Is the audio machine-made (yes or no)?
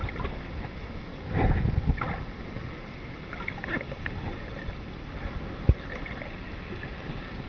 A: no